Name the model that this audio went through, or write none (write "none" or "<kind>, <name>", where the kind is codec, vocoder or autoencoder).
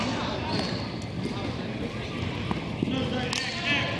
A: none